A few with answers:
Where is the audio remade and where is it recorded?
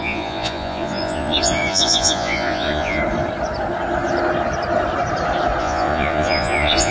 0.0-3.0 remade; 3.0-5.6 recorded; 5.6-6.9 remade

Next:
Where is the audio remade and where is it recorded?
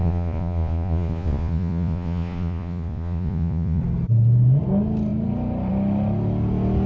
0.0-3.8 remade; 3.8-6.9 recorded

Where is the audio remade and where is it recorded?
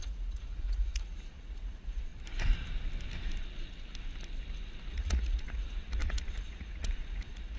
0.0-2.1 remade; 2.1-4.9 recorded; 4.9-7.6 remade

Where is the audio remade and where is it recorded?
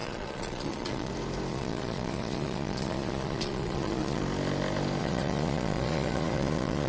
0.0-1.1 remade; 1.1-1.5 recorded; 1.5-4.2 remade; 4.2-5.0 recorded; 5.0-6.9 remade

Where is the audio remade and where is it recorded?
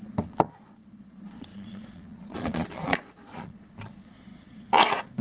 0.0-5.2 remade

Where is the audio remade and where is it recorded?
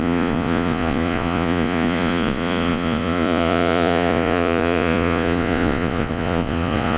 0.0-7.0 remade